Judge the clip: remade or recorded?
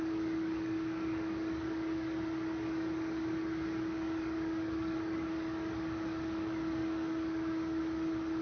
remade